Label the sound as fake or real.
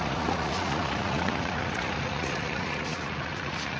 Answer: fake